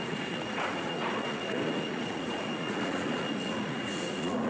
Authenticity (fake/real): fake